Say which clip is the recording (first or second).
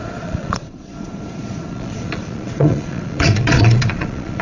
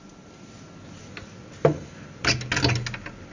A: second